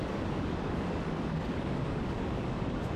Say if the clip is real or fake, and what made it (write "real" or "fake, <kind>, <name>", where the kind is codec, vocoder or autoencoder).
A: fake, codec, DAC